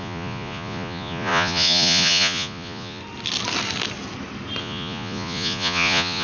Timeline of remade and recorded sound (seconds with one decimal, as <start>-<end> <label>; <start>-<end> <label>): 0.0-3.0 remade; 3.0-4.6 recorded; 4.6-6.2 remade